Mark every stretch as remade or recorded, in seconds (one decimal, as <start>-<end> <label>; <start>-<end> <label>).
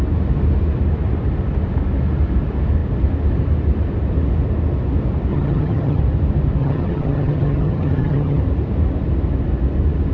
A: 0.0-5.3 recorded; 5.3-6.0 remade; 6.0-6.6 recorded; 6.6-8.4 remade; 8.4-10.1 recorded